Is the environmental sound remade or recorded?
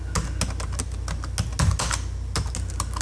recorded